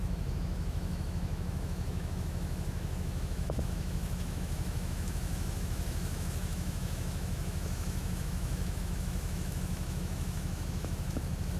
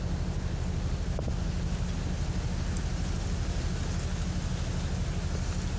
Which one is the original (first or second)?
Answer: second